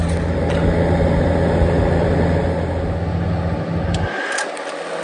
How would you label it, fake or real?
real